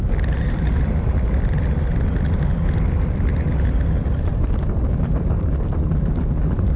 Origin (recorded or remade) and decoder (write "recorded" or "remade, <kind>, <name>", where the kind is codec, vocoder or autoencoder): remade, vocoder, BigVGAN v2